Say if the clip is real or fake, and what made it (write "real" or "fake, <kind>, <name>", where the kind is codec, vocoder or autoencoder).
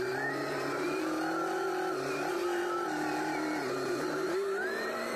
fake, vocoder, BigVGAN v2